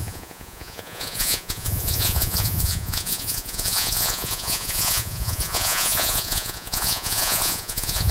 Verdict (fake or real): fake